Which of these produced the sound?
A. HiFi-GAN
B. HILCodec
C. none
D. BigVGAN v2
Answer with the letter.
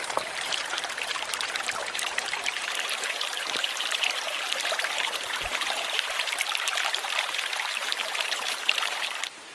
D